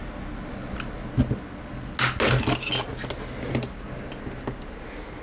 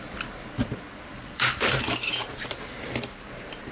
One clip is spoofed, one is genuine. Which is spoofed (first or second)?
second